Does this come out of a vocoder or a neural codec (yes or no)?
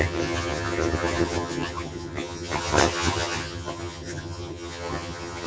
yes